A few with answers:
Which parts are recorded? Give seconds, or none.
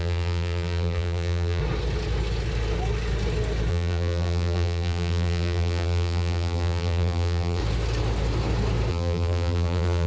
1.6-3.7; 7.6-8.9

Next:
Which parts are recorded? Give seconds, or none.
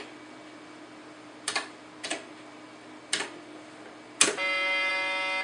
0.0-5.4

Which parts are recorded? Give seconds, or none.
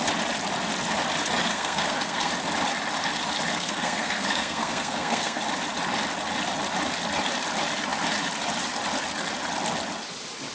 0.0-1.5; 2.3-3.5; 5.4-10.5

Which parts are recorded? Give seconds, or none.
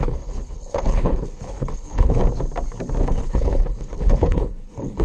2.2-3.0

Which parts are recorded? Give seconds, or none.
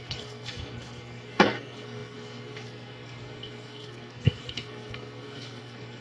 none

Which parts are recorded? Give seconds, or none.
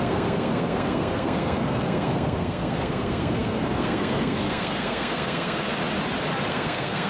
5.8-6.5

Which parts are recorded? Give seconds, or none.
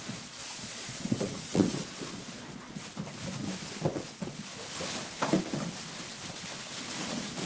2.8-3.9; 4.5-7.1